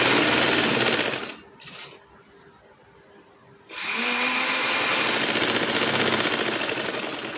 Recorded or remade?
recorded